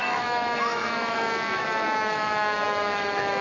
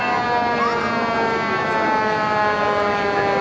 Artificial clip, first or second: first